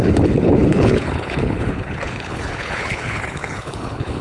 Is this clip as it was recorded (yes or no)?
no